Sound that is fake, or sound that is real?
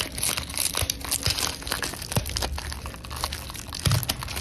real